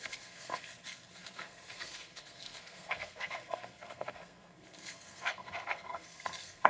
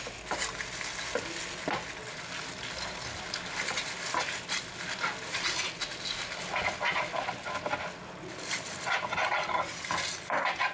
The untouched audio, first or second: second